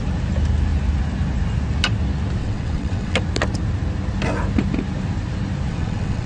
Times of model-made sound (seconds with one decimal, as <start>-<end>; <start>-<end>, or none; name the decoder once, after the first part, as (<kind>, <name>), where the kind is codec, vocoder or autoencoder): 2.4-3.2 (vocoder, WaveNeXt); 5.7-6.3